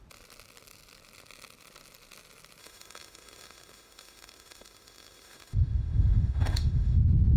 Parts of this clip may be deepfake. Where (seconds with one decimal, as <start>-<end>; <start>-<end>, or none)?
2.6-7.0